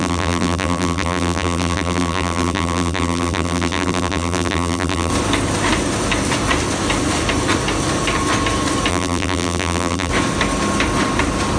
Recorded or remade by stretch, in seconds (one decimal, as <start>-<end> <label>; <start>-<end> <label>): 0.0-5.1 remade; 5.1-8.9 recorded; 8.9-10.1 remade; 10.1-11.6 recorded